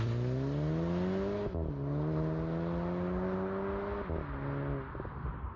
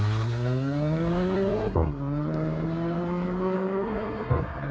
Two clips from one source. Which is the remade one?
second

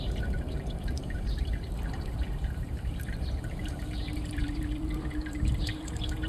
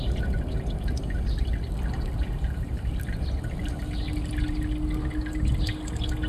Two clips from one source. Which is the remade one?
first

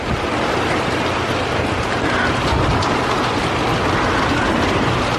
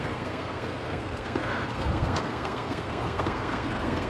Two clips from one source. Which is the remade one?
second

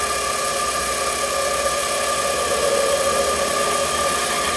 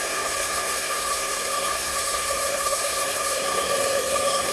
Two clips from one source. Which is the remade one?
second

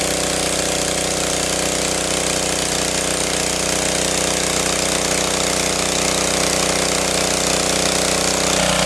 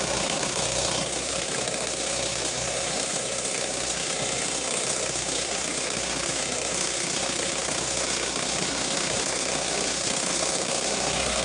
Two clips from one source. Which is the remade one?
second